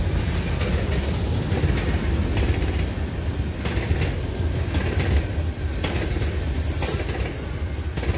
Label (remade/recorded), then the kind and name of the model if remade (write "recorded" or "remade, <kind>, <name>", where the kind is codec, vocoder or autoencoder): recorded